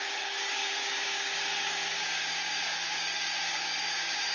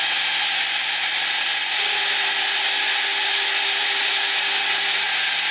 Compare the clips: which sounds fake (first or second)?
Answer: first